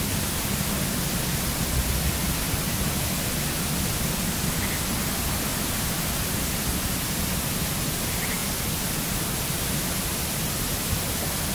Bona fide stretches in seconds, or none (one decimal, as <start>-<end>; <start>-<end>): 0.0-5.5; 6.0-11.5

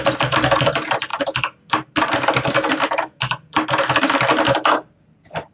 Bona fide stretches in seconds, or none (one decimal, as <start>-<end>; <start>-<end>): 0.0-5.5

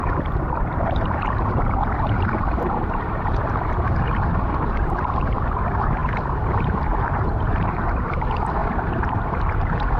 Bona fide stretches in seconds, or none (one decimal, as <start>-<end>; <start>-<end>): none

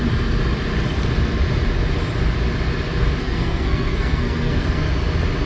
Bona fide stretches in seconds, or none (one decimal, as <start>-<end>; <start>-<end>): 0.0-3.2; 4.9-5.5

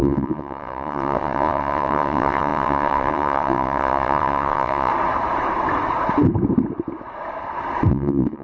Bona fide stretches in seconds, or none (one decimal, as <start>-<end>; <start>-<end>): 4.9-7.9